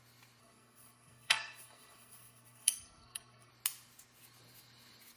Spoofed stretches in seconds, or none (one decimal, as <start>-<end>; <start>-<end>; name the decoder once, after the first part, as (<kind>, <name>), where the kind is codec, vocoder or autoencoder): 0.4-3.5 (codec, SNAC)